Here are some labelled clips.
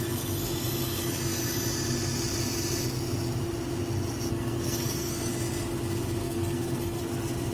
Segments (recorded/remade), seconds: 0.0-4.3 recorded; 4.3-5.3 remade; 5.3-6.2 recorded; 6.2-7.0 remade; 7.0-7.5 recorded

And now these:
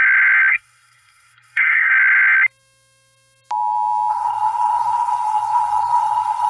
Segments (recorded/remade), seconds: 0.0-0.5 recorded; 0.5-1.9 remade; 1.9-4.1 recorded; 4.1-6.5 remade

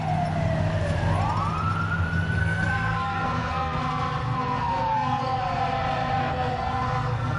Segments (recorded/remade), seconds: 0.0-2.4 recorded; 2.4-3.8 remade; 3.8-4.2 recorded; 4.2-5.4 remade; 5.4-6.2 recorded; 6.2-7.4 remade

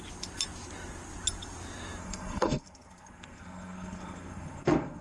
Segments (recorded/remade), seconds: 0.0-2.0 recorded; 2.0-5.0 remade

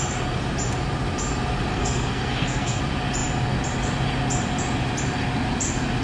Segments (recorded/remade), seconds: 0.0-1.7 recorded; 1.7-2.8 remade; 2.8-6.0 recorded

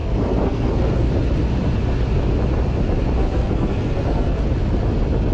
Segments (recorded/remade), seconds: 0.0-1.1 remade; 1.1-3.2 recorded; 3.2-4.4 remade; 4.4-5.3 recorded